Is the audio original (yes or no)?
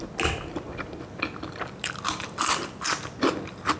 yes